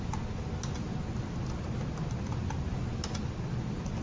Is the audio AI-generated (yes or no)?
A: no